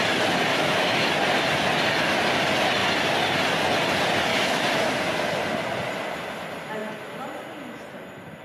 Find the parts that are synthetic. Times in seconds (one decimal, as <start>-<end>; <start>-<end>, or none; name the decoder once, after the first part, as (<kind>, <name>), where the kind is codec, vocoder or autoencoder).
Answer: 0.5-1.1 (autoencoder, DAC-VAE); 4.3-4.8

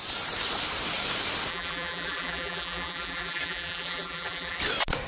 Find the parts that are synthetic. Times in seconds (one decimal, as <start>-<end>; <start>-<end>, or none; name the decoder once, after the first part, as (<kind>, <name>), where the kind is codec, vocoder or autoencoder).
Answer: 1.5-4.6 (vocoder, BigVGAN v2)

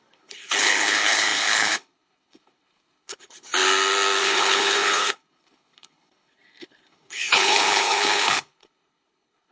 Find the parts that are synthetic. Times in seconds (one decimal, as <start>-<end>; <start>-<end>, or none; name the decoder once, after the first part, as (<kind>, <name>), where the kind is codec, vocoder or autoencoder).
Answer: 0.0-3.5 (codec, HILCodec); 4.2-9.5

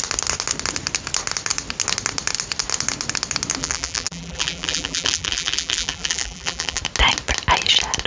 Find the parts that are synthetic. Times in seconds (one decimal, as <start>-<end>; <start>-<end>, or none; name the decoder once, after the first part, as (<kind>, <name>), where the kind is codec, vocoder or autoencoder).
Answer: 3.6-6.8 (vocoder, BigVGAN v2)